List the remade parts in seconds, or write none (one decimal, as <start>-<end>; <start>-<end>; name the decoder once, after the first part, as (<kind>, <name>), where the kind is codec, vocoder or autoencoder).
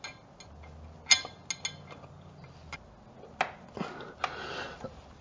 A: none